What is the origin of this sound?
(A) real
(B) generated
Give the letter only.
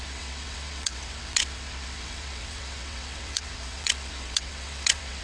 B